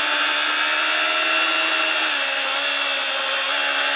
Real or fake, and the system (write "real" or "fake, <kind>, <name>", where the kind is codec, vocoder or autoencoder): real